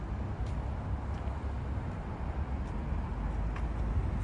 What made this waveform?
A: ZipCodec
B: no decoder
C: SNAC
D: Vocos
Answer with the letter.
B